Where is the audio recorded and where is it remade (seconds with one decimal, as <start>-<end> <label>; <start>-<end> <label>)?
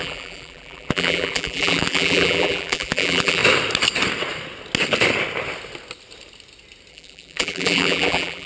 0.0-3.4 remade; 3.4-6.9 recorded; 6.9-8.5 remade